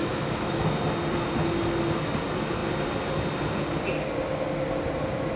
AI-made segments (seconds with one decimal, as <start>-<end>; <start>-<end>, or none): 0.0-0.6